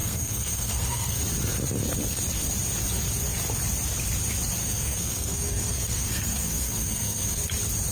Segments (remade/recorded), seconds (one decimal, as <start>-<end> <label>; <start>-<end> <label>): 0.0-1.2 remade; 1.2-4.6 recorded; 4.6-7.4 remade; 7.4-7.9 recorded